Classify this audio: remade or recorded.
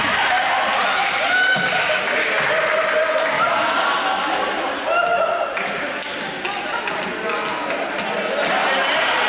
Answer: recorded